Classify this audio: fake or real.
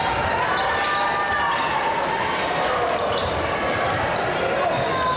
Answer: real